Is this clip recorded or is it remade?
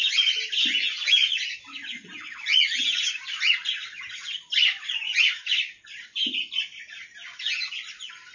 recorded